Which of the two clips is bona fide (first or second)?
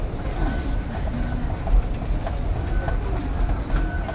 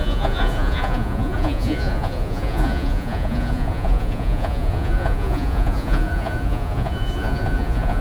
first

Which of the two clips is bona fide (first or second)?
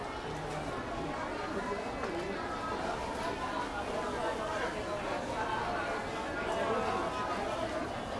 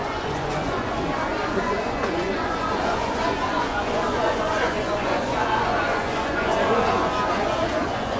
first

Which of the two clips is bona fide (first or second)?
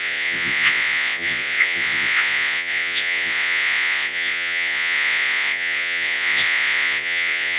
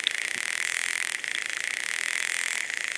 second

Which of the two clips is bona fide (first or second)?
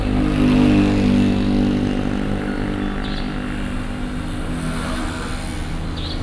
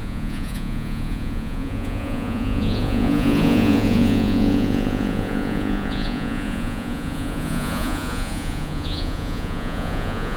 first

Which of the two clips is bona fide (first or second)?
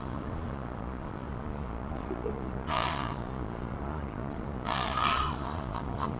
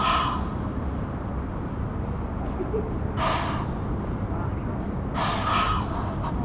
second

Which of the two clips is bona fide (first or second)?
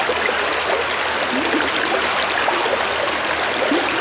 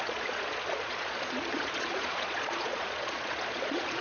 first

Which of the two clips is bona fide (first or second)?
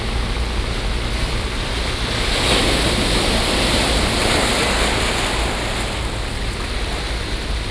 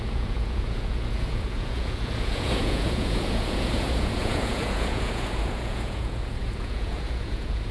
first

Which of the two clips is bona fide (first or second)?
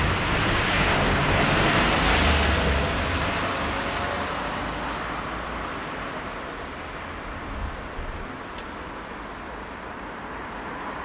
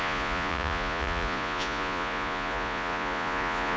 first